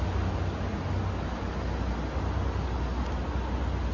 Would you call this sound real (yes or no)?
yes